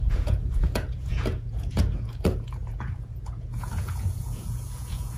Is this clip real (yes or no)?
no